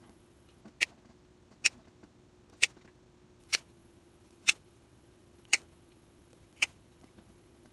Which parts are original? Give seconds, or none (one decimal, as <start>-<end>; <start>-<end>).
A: 0.6-3.4